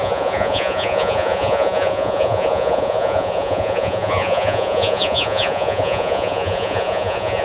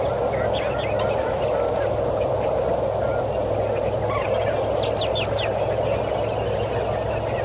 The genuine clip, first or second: second